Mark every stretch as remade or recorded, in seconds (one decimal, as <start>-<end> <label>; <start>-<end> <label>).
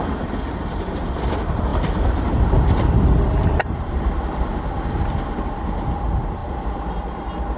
0.0-7.6 recorded